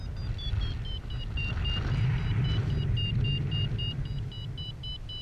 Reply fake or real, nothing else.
real